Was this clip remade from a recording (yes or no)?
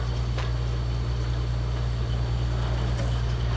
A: no